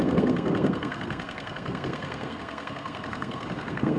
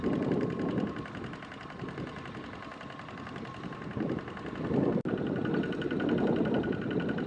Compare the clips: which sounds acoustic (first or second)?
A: second